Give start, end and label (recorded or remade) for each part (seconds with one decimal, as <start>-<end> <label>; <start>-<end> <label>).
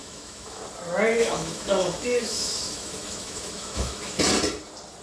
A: 0.0-0.6 remade; 0.6-1.2 recorded; 1.2-4.2 remade; 4.2-5.0 recorded